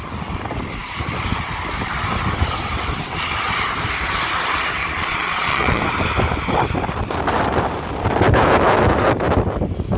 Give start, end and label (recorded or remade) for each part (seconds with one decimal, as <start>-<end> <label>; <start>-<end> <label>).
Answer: 0.0-4.8 recorded; 4.8-5.8 remade; 5.8-10.0 recorded